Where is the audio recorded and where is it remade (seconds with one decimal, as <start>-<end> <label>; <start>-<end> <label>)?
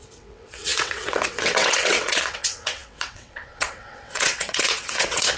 0.0-5.4 remade